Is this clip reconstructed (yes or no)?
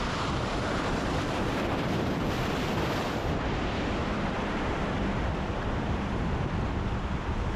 yes